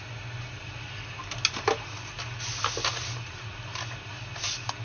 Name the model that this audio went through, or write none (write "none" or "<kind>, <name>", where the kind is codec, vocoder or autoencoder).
none